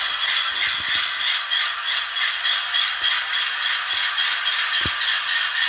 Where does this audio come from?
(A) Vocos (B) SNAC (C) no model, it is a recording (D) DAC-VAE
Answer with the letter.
C